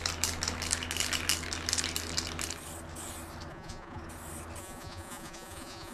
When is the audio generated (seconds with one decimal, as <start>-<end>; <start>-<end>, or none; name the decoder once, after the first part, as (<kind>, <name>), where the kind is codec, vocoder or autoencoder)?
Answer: 3.5-4.0 (vocoder, Vocos); 4.6-5.9